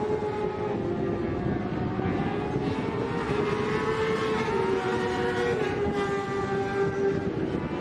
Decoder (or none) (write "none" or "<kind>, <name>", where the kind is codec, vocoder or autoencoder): none